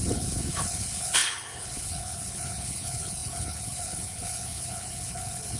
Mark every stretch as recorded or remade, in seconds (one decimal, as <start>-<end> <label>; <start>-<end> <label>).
0.0-5.6 remade